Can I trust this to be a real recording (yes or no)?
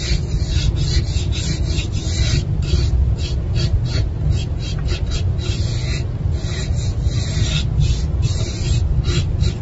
yes